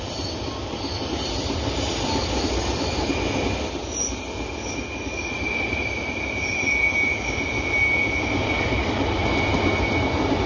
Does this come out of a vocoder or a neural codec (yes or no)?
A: no